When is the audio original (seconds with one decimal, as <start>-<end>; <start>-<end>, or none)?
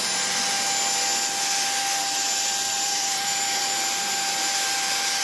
0.0-2.0